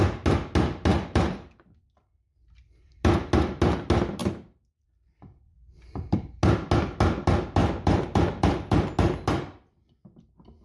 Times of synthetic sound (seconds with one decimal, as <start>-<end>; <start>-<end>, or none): 0.9-3.0; 4.2-6.3; 7.6-8.9